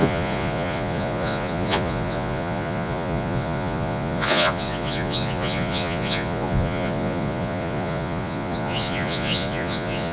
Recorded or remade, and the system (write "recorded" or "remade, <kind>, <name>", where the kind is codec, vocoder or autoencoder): remade, vocoder, Vocos